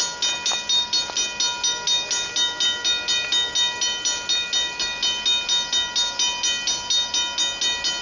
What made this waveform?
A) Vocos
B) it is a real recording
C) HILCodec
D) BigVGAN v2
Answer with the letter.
B